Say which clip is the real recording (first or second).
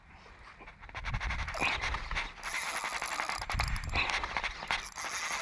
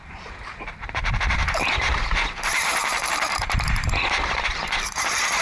first